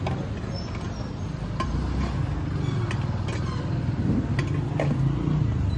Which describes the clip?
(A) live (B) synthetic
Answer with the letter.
A